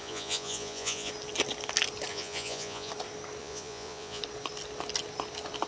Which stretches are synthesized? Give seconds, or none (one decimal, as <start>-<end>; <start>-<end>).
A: 0.0-1.1; 2.1-2.9; 3.4-4.2